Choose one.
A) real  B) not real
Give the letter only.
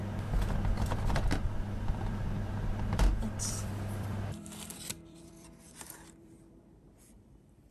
B